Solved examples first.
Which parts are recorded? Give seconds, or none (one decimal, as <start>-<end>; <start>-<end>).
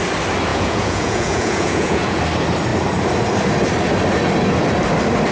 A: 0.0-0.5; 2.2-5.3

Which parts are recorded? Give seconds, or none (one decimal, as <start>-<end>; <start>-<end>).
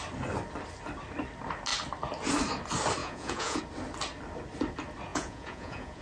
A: 0.0-3.0; 3.6-5.1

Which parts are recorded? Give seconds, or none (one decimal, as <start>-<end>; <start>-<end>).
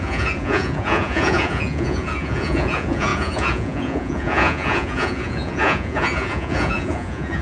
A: none